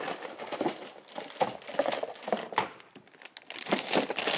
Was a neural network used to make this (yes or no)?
no